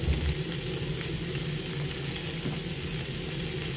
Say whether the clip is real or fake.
real